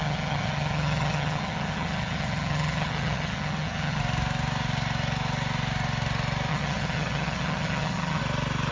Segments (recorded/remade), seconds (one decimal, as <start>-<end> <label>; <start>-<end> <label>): 0.0-4.0 remade; 4.0-6.5 recorded; 6.5-8.2 remade; 8.2-8.7 recorded